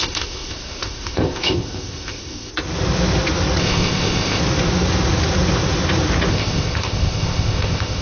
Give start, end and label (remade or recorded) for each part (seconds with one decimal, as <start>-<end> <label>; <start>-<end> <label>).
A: 0.0-2.5 remade; 2.5-3.6 recorded; 3.6-4.4 remade; 4.4-6.3 recorded; 6.3-8.0 remade